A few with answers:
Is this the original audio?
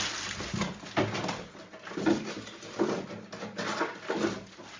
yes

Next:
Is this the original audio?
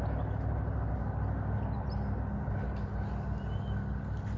yes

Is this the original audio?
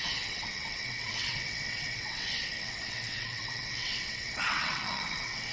no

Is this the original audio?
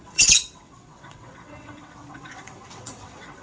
no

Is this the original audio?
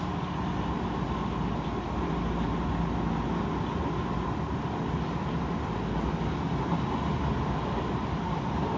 yes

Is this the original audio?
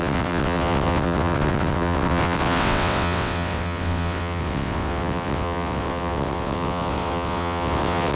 no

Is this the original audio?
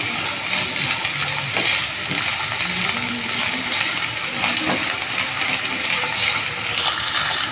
yes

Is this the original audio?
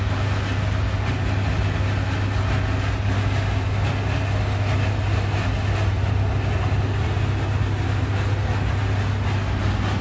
yes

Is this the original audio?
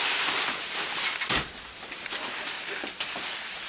yes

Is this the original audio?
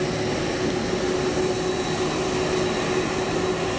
yes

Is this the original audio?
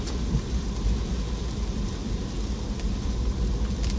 yes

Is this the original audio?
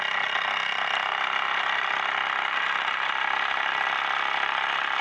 yes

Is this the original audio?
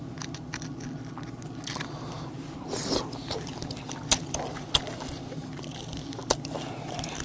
yes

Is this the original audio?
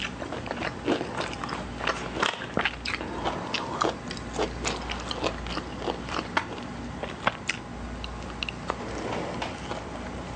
yes